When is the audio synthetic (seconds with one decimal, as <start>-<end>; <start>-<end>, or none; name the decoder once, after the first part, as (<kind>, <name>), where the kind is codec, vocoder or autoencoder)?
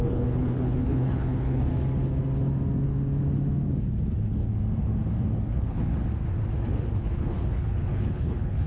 0.0-1.7 (codec, HILCodec); 5.5-5.9; 6.6-8.7